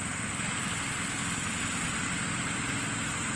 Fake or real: real